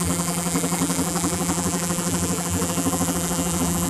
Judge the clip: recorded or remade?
remade